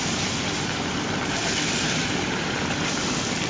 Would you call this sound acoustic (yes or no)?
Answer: yes